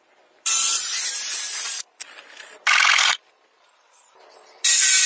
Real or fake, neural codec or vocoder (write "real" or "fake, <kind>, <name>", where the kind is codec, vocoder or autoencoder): fake, vocoder, BigVGAN v2